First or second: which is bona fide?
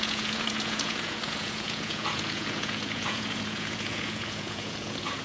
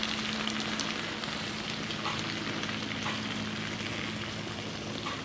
second